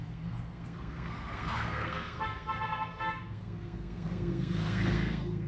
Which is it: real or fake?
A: fake